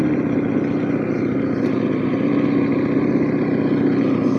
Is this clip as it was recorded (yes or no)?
yes